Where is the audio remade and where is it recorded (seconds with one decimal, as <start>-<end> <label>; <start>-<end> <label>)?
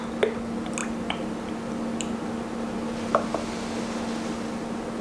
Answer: 0.0-5.0 recorded